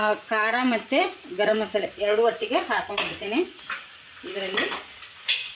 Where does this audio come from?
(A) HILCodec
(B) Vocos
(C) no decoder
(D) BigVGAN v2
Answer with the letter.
B